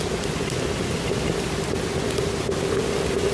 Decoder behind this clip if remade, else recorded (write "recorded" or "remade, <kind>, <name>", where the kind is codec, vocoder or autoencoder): recorded